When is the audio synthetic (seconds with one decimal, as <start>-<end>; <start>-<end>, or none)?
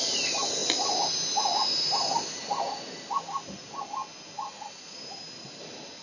none